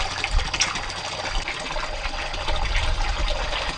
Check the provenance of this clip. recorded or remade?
recorded